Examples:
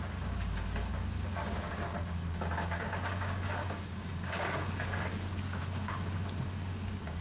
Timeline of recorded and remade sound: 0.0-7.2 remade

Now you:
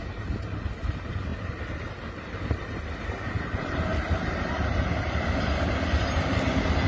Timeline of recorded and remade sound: 0.0-6.9 recorded

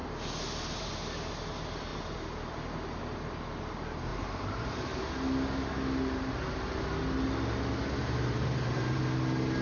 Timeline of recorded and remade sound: 0.0-1.9 recorded; 1.9-3.0 remade; 3.0-4.1 recorded; 4.1-5.0 remade; 5.0-8.0 recorded; 8.0-9.0 remade; 9.0-9.6 recorded